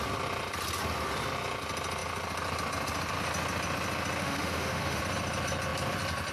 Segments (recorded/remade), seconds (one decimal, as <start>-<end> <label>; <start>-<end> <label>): 0.0-4.2 recorded; 4.2-5.0 remade; 5.0-6.3 recorded